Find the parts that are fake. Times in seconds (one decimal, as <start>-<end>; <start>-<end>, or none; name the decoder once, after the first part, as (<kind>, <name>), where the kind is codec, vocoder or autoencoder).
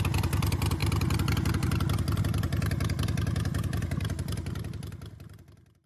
none